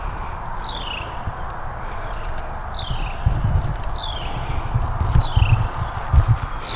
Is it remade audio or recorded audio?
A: recorded